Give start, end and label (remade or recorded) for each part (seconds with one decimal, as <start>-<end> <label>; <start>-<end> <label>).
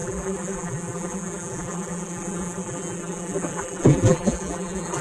0.0-5.0 remade